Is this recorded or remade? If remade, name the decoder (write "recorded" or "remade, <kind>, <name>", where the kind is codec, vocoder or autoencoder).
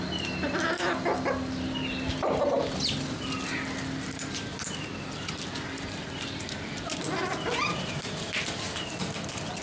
remade, vocoder, BigVGAN v2